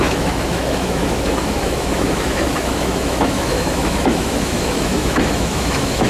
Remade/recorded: remade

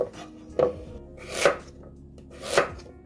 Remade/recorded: recorded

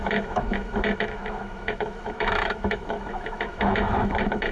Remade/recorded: remade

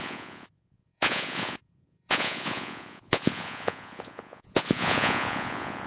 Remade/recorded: remade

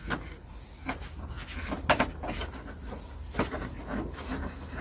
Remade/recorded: recorded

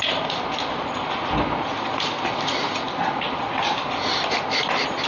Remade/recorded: recorded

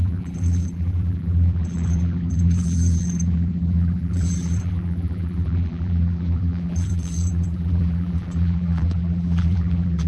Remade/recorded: remade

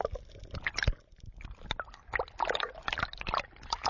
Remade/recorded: recorded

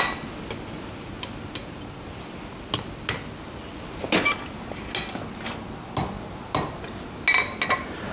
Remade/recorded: recorded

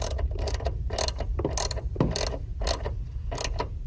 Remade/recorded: recorded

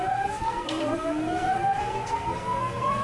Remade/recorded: remade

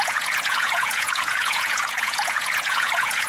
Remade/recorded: remade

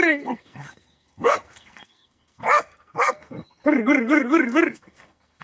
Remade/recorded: remade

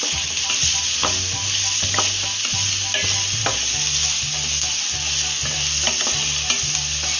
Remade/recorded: recorded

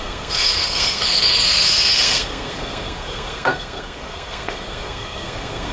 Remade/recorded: remade